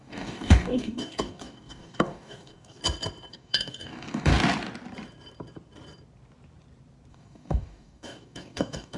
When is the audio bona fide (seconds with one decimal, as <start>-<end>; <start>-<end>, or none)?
2.8-3.3; 4.3-7.1

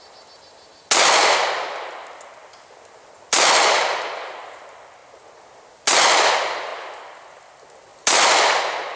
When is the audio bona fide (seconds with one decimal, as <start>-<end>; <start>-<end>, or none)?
0.0-9.0